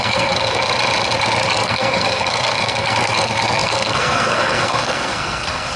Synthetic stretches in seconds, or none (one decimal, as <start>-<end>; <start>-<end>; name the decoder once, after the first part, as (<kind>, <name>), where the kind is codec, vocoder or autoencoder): 0.0-0.6 (codec, SNAC); 1.6-5.8